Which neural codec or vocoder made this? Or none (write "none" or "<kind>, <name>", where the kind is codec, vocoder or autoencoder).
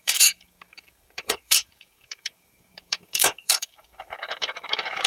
codec, DAC